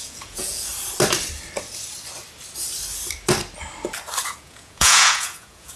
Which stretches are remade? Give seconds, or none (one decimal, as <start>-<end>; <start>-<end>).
0.0-0.7; 4.2-5.8